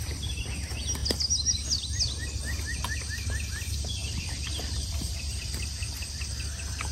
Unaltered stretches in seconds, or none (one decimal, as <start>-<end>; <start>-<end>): 0.0-4.0; 6.3-6.9